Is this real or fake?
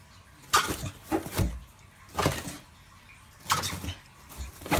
real